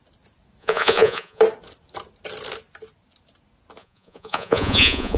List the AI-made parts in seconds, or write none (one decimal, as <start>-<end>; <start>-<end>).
0.6-1.4; 3.8-5.2

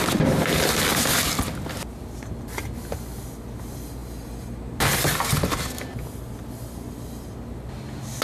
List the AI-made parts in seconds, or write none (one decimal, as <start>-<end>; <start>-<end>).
none

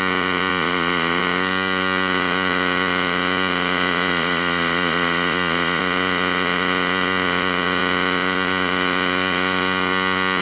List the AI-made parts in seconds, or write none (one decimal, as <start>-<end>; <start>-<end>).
0.5-1.2; 4.1-5.8

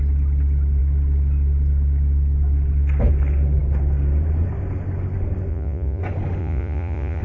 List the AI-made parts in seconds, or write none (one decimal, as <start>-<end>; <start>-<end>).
5.5-6.0; 6.4-7.2

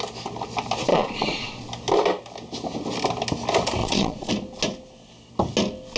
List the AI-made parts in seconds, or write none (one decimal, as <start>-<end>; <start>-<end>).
0.9-1.7; 3.8-4.3

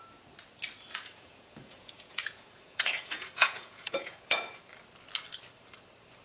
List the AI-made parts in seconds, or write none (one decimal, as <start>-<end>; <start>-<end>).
0.9-4.6

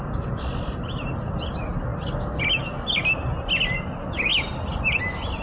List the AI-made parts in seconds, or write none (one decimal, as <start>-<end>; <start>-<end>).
none